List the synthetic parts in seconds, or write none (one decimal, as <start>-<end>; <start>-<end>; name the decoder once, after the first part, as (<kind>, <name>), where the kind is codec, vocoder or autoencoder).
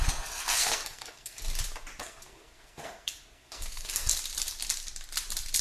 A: 0.0-1.5 (codec, SNAC); 2.0-4.1